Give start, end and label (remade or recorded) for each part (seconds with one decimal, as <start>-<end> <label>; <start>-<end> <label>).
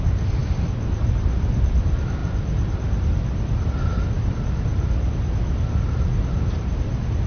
0.0-0.4 recorded; 0.4-1.8 remade; 1.8-2.2 recorded; 2.2-3.7 remade; 3.7-7.3 recorded